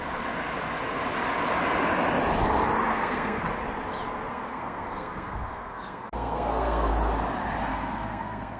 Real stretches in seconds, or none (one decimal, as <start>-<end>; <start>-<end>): 0.0-2.9; 3.4-4.3; 6.9-7.7